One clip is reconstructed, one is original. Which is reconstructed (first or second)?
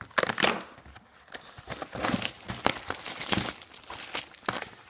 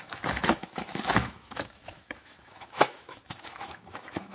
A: second